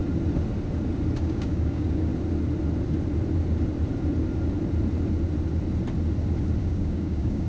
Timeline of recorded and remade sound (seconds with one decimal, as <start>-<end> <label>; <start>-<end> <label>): 0.0-1.2 recorded; 1.2-2.1 remade; 2.1-6.6 recorded; 6.6-7.5 remade